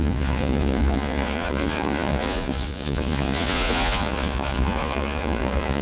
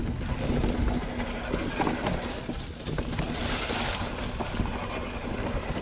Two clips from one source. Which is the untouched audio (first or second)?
second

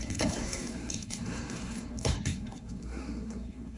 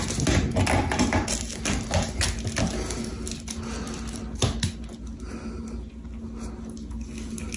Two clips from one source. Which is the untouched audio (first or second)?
second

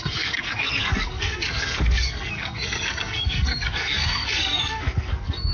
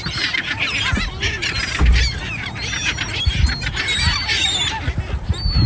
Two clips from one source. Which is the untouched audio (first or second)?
second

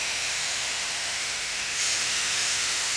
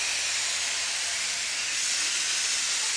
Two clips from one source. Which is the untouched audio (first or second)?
second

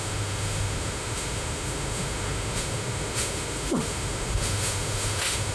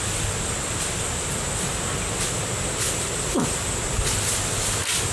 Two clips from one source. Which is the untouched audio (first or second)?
second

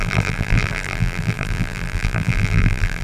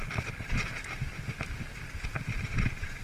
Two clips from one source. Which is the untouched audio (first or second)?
second